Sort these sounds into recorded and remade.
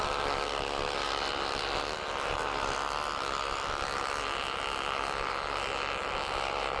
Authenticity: recorded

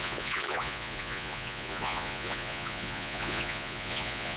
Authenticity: remade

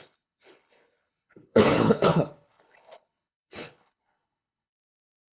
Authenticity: remade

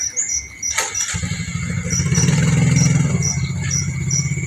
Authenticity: recorded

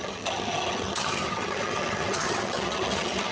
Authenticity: remade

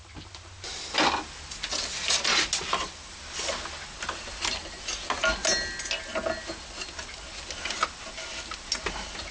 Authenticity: recorded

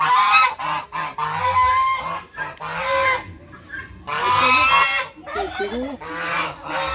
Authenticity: recorded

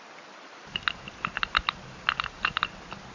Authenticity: recorded